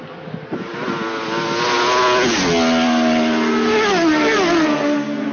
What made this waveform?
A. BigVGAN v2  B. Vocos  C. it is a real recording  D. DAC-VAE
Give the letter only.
C